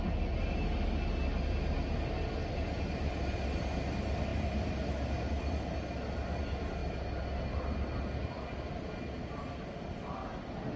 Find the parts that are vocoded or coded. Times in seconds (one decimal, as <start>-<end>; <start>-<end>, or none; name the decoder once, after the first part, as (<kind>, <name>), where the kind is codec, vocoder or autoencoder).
none